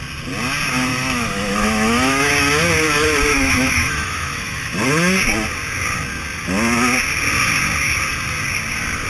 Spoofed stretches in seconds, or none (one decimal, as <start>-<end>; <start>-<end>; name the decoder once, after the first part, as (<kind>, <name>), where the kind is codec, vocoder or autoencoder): 0.9-2.3 (autoencoder, DAC-VAE); 3.3-4.8

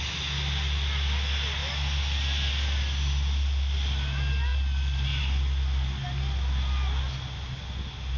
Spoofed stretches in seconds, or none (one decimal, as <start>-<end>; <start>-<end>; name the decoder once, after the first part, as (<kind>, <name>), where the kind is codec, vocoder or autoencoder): none

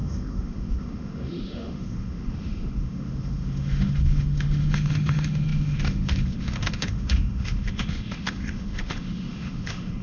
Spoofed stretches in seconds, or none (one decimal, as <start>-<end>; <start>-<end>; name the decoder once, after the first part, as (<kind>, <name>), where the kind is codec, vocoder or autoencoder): 0.0-10.0 (autoencoder, DAC-VAE)

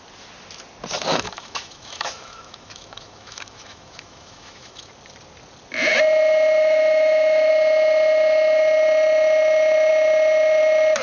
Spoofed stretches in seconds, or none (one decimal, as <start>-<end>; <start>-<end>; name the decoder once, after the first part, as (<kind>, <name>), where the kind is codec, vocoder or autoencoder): 1.1-4.9 (autoencoder, DAC-VAE); 6.6-7.5

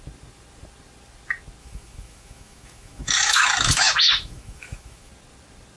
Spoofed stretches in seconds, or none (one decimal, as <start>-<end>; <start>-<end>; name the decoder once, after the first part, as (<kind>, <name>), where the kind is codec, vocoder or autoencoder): 1.6-5.1 (autoencoder, DAC-VAE)

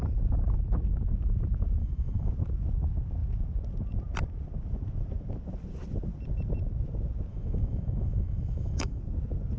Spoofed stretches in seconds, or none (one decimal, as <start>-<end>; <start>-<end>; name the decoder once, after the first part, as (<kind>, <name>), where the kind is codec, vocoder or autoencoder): 1.8-2.3 (autoencoder, DAC-VAE); 7.3-9.0

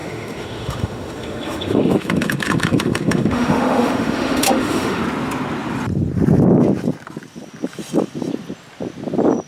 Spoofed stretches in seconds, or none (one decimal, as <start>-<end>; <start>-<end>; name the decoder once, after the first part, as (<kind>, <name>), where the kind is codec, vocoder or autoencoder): 0.0-5.0 (autoencoder, DAC-VAE)